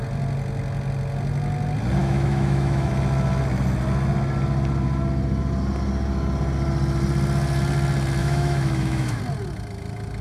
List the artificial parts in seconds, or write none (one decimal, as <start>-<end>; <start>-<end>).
2.0-2.9; 8.2-9.2